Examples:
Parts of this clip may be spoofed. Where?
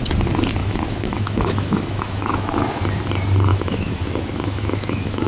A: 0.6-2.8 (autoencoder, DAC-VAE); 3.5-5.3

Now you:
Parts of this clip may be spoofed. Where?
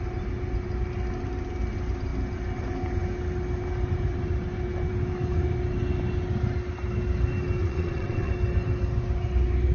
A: 7.6-8.3 (vocoder, WaveNeXt)